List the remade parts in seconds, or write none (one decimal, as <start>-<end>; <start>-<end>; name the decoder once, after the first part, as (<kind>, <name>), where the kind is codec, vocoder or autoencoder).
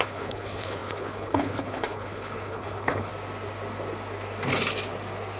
0.0-3.1 (codec, HILCodec)